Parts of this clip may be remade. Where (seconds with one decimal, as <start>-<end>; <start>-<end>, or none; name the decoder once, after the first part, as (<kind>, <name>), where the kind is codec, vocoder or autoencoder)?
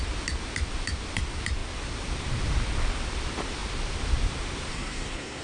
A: 4.7-5.4 (codec, SNAC)